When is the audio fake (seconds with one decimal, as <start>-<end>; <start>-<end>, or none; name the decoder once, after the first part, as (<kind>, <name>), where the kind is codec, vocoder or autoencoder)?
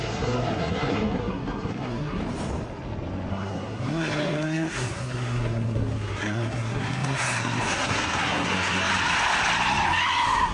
0.0-2.2 (codec, SNAC); 3.3-8.9; 10.1-10.5